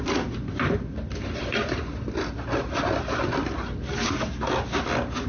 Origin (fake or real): real